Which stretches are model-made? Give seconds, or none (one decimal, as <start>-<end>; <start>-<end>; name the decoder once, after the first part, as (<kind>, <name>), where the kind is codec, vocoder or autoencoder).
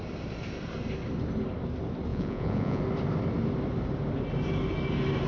2.1-2.8 (vocoder, Vocos)